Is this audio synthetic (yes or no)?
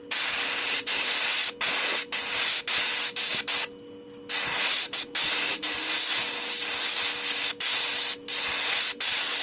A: no